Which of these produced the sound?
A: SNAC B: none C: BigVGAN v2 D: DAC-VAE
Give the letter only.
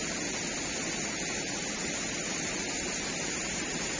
B